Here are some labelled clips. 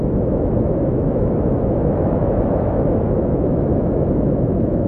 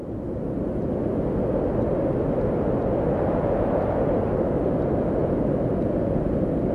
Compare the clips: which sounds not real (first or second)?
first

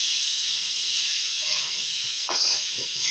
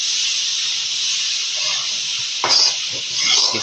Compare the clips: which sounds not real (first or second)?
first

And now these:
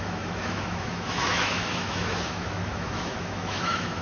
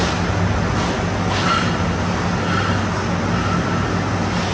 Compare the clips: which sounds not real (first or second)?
first